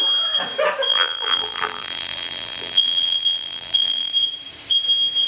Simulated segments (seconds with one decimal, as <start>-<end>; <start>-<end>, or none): 0.9-4.1